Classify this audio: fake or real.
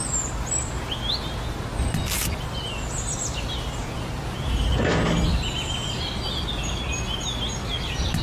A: real